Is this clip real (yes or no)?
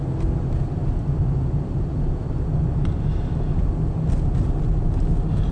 yes